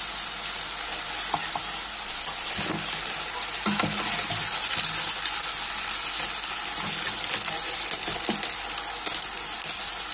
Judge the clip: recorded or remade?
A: recorded